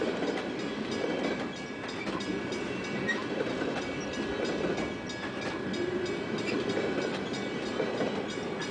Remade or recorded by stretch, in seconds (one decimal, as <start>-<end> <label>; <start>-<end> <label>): 0.0-8.7 recorded